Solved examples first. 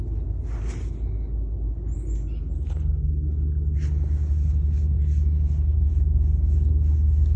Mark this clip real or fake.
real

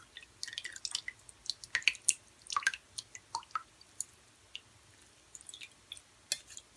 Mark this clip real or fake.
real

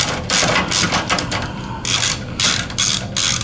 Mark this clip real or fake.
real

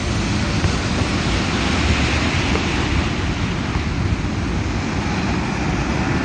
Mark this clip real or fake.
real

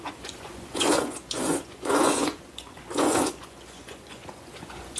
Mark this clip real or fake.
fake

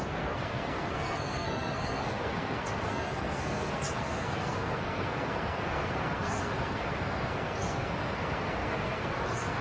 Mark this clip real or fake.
fake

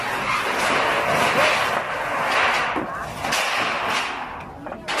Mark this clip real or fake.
real